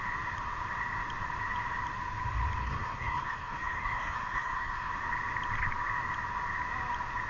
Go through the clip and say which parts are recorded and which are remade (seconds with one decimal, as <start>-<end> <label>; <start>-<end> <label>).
0.0-2.6 recorded; 2.6-4.9 remade; 4.9-7.3 recorded